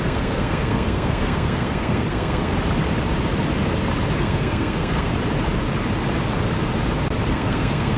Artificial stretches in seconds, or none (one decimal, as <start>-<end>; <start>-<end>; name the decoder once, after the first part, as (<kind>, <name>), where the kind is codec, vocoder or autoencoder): 0.0-2.5 (codec, SNAC); 4.2-5.1; 7.3-8.0